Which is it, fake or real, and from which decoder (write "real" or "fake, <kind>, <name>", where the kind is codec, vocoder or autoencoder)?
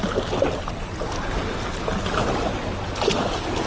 real